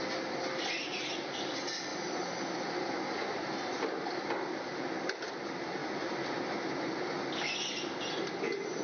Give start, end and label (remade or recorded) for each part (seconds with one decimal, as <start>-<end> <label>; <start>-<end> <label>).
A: 0.0-8.8 recorded